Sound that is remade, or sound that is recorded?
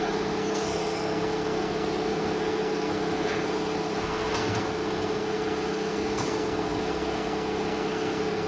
remade